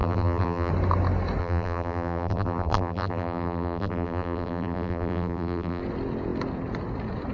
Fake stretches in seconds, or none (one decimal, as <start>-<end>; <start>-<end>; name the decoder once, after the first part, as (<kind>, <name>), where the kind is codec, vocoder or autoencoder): 0.0-0.7 (vocoder, BigVGAN v2); 1.4-5.8